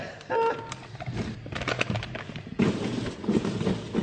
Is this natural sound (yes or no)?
yes